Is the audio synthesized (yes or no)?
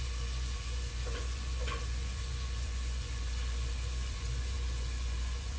yes